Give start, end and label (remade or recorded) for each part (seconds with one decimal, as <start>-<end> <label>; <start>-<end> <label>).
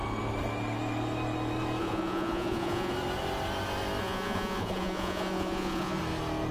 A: 0.0-1.8 recorded; 1.8-2.9 remade; 2.9-4.0 recorded; 4.0-6.0 remade; 6.0-6.5 recorded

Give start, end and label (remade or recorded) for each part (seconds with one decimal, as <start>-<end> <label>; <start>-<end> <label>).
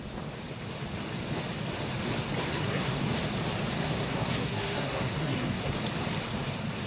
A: 0.0-2.5 recorded; 2.5-3.0 remade; 3.0-3.8 recorded; 3.8-5.7 remade; 5.7-6.9 recorded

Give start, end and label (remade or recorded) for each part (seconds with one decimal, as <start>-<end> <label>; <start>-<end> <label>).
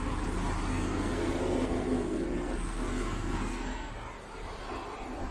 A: 0.0-0.7 recorded; 0.7-3.9 remade; 3.9-5.3 recorded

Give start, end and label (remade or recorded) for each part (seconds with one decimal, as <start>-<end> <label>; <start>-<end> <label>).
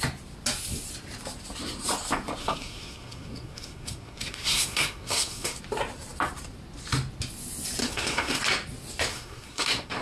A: 0.0-2.4 recorded; 2.4-5.6 remade; 5.6-7.8 recorded; 7.8-8.4 remade; 8.4-9.1 recorded; 9.1-10.0 remade